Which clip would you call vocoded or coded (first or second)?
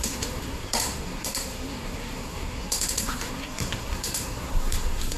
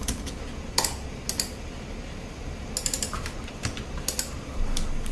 first